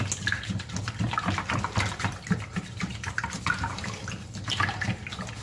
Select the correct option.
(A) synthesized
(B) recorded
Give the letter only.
B